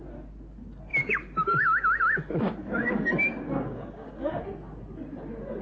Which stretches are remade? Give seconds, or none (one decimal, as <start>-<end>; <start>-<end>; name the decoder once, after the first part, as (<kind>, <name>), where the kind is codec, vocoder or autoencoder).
0.9-4.3 (codec, DAC)